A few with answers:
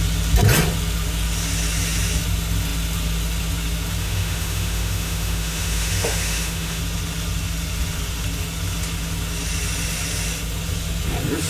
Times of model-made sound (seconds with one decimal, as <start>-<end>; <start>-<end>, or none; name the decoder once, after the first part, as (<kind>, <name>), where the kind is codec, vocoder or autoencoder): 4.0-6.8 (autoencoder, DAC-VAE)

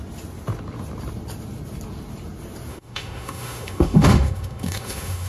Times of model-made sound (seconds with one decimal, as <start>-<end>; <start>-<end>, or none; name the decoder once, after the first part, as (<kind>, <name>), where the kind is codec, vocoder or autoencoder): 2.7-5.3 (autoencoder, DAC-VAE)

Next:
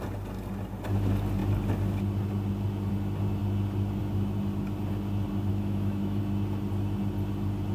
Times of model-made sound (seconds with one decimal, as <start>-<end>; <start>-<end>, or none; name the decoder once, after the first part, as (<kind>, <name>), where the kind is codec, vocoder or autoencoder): 5.5-6.2 (autoencoder, DAC-VAE)

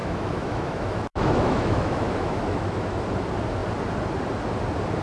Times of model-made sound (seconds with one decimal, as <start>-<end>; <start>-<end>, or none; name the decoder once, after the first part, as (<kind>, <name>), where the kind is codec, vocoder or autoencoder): 0.0-3.0 (autoencoder, DAC-VAE)

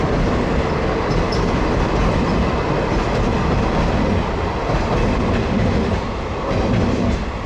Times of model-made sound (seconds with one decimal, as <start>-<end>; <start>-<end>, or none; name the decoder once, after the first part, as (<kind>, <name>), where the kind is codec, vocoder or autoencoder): 5.4-5.9 (autoencoder, DAC-VAE)

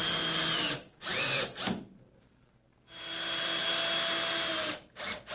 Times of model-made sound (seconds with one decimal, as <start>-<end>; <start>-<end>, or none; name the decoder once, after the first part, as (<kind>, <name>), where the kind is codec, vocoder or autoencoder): none

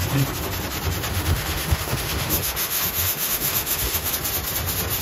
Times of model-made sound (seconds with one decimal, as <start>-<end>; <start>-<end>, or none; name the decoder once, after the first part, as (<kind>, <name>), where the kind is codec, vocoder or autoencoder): 1.1-4.1 (autoencoder, DAC-VAE)